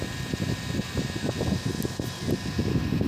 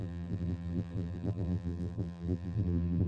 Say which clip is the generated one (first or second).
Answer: second